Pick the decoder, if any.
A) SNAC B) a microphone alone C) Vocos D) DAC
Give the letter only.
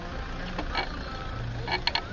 B